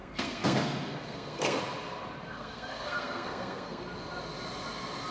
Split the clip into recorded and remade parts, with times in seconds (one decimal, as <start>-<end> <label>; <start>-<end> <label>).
0.0-1.6 remade; 1.6-2.3 recorded; 2.3-3.8 remade; 3.8-5.1 recorded